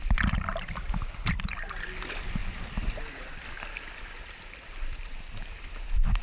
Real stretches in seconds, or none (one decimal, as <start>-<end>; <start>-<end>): 0.0-6.2